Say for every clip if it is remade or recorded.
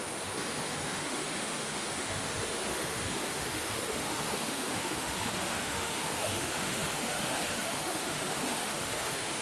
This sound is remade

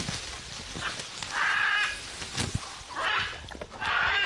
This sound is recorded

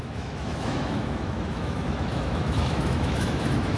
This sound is remade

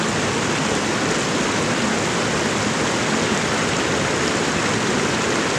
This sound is recorded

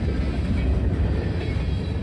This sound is recorded